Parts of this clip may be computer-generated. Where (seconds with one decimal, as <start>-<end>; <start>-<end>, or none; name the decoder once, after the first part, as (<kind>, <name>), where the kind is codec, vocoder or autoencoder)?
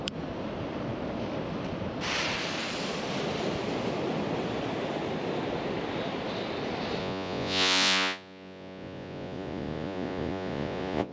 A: 7.0-11.1 (vocoder, Vocos)